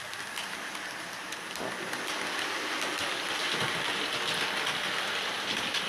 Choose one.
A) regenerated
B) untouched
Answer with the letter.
B